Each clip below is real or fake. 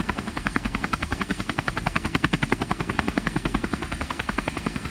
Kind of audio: fake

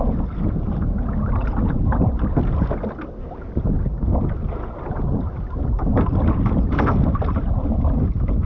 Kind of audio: real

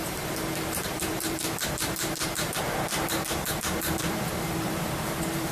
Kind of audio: fake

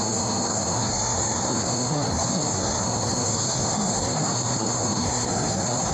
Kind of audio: fake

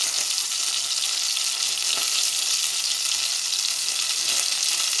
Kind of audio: real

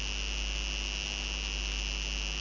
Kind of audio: real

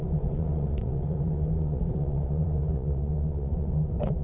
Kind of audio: fake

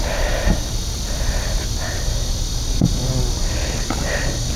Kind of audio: real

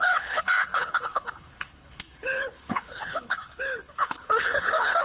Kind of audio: fake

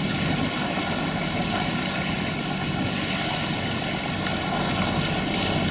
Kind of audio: real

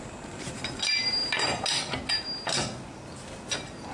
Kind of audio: real